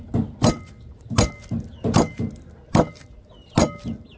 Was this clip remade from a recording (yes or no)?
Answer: no